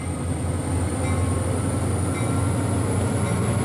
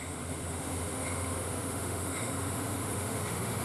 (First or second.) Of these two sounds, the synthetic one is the second